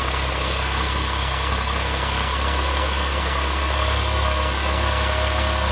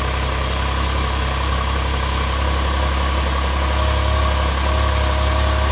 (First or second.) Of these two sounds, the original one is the second